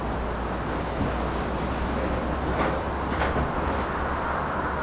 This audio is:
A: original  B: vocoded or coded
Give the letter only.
A